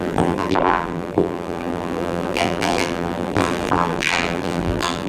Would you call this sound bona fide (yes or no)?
no